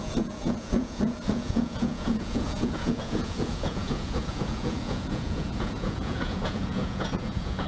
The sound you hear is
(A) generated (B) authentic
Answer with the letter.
A